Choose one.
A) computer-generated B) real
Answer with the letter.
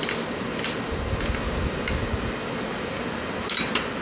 B